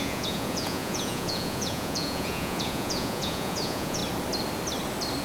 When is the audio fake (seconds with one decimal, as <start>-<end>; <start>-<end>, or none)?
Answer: 0.0-4.0